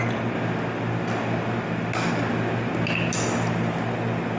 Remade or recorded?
recorded